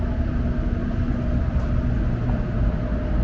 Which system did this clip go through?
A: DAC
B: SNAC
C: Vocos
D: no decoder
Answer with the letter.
D